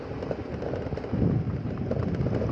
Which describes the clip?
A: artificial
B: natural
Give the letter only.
A